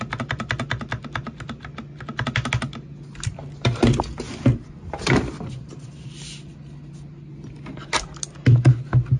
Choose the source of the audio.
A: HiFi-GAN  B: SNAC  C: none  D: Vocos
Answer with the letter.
C